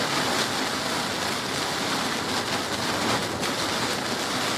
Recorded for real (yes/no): yes